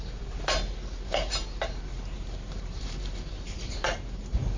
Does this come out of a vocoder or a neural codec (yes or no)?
yes